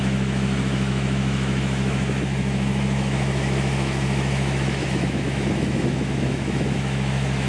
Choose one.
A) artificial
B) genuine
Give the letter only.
A